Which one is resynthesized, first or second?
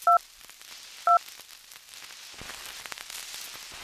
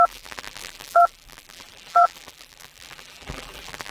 second